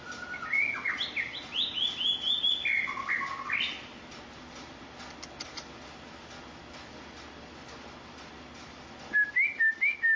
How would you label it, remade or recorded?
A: recorded